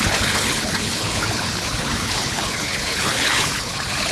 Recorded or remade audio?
remade